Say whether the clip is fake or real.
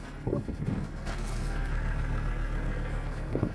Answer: fake